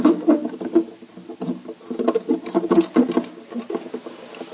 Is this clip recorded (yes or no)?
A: yes